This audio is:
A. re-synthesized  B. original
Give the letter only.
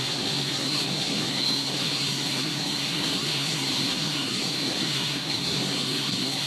A